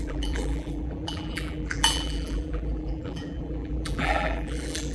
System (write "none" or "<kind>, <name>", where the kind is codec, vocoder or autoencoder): vocoder, BigVGAN v2